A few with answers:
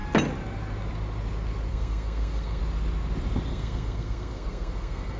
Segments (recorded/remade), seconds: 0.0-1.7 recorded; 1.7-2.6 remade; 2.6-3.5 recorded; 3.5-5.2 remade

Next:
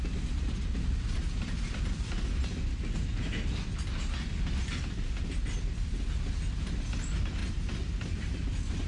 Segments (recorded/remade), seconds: 0.0-8.9 recorded

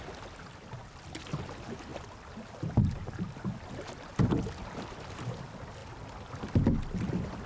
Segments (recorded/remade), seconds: 0.0-7.5 recorded

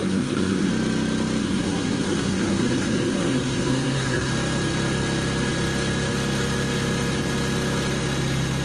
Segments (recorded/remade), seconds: 0.0-0.7 remade; 0.7-1.4 recorded; 1.4-4.3 remade; 4.3-8.6 recorded

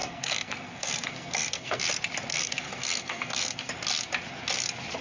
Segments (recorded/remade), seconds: 0.0-1.8 remade; 1.8-2.3 recorded; 2.3-3.7 remade; 3.7-5.0 recorded

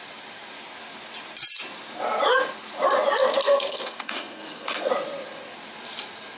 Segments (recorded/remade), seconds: 0.0-3.4 recorded; 3.4-4.9 remade; 4.9-6.4 recorded

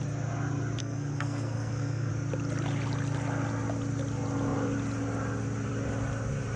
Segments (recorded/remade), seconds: 0.0-0.8 recorded; 0.8-2.1 remade; 2.1-6.6 recorded

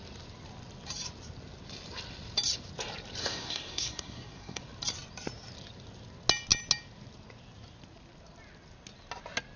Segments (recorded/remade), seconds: 0.0-3.2 recorded; 3.2-4.6 remade; 4.6-9.6 recorded